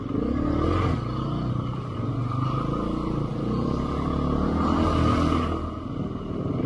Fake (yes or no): no